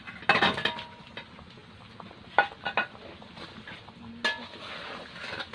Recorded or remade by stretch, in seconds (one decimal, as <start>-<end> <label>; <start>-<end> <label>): 0.0-5.5 recorded